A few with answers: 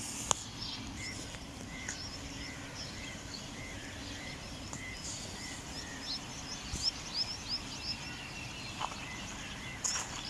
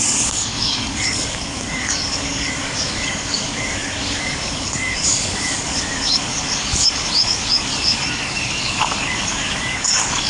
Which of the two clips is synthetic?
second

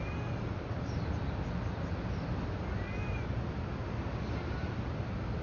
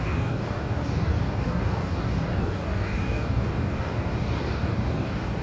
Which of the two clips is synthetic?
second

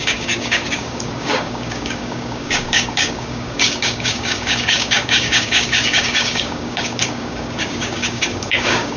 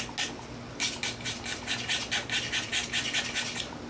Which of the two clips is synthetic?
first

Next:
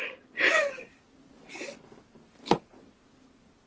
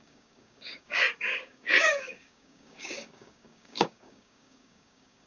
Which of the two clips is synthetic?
second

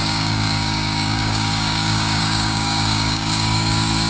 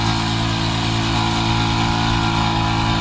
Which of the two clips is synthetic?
first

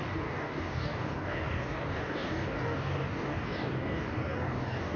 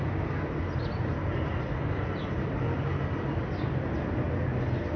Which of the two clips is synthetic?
first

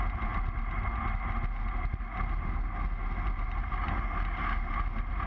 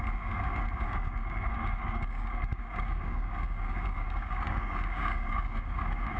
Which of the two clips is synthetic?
second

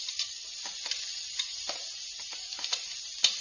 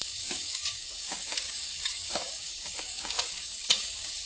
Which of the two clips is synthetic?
second